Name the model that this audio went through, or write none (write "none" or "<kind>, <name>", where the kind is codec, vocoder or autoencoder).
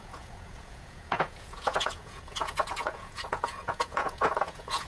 vocoder, Vocos